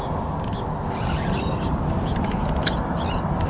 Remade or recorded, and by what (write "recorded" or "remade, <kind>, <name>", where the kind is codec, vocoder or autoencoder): recorded